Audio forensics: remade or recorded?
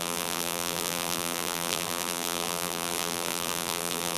remade